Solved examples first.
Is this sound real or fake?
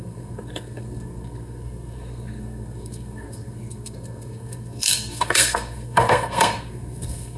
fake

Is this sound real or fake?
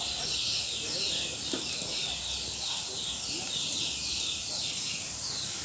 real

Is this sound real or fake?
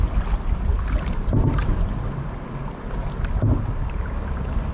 real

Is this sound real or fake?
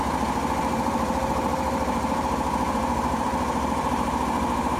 fake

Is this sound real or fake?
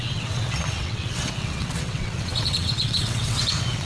fake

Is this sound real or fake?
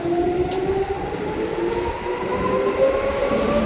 real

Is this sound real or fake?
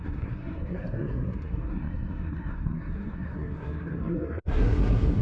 fake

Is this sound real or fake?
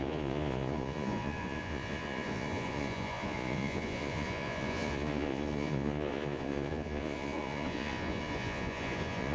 fake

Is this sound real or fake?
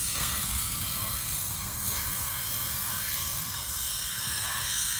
fake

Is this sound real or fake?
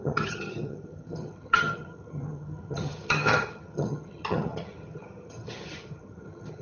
fake